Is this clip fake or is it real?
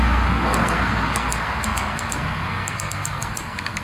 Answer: fake